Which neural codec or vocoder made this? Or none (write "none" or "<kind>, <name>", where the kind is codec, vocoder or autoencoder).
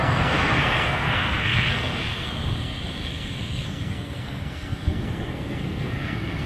codec, SNAC